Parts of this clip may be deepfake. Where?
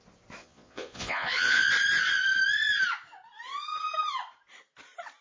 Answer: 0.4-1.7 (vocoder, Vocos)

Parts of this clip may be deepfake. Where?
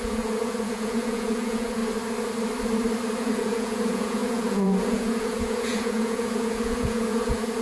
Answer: 0.0-1.8 (vocoder, Vocos); 3.2-7.6